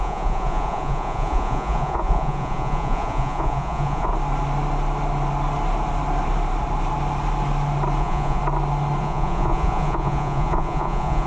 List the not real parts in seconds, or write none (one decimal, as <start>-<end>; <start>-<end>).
0.0-4.1; 8.0-8.4; 9.0-11.3